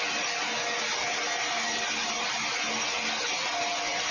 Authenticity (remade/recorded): recorded